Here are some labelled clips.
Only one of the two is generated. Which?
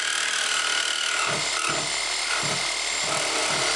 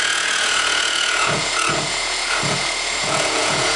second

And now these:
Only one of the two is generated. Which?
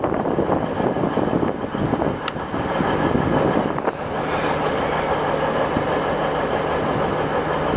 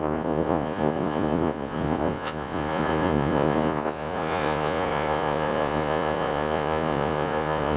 second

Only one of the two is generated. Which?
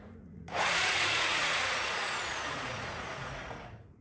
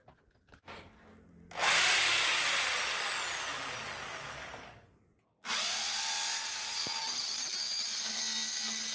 first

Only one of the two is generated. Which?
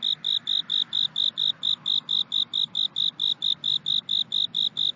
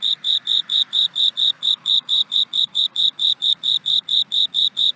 second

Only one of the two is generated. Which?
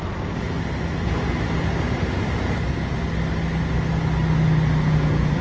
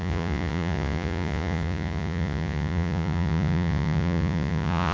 second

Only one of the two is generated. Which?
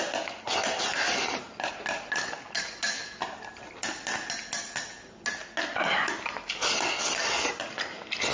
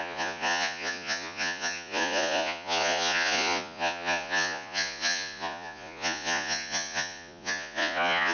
second